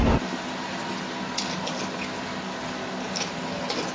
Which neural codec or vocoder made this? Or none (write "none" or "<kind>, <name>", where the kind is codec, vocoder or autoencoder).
none